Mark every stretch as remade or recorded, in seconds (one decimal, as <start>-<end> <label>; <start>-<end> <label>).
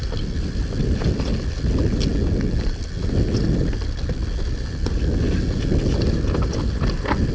0.0-7.3 recorded